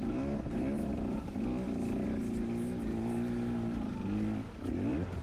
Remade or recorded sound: recorded